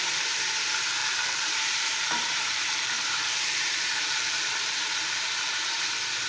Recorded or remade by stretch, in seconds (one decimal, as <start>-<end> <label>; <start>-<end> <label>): 0.0-1.0 recorded; 1.0-4.8 remade; 4.8-6.3 recorded